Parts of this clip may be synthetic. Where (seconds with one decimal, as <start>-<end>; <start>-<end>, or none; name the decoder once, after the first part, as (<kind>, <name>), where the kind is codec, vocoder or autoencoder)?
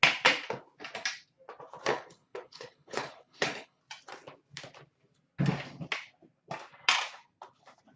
1.9-3.8 (codec, HILCodec)